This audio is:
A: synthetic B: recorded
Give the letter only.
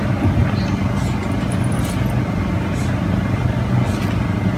B